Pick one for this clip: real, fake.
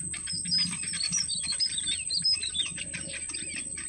real